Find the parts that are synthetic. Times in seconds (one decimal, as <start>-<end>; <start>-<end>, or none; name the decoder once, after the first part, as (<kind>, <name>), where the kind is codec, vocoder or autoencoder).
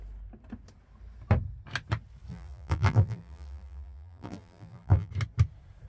2.3-5.1 (vocoder, BigVGAN v2)